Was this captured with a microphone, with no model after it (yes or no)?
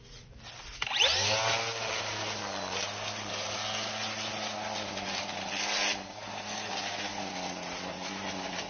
yes